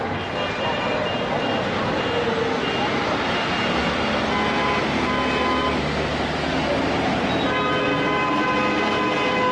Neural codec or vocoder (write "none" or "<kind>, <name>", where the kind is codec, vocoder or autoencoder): none